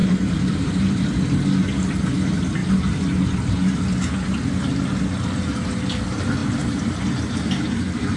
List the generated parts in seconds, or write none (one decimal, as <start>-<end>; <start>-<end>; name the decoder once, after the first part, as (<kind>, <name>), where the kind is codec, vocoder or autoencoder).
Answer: 0.0-1.2 (vocoder, BigVGAN v2); 6.4-8.2